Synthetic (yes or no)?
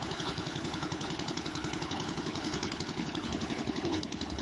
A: yes